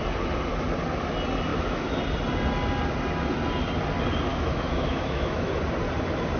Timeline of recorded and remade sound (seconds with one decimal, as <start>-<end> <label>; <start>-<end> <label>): 0.0-1.5 recorded; 1.5-2.0 remade; 2.0-4.3 recorded; 4.3-5.5 remade; 5.5-6.4 recorded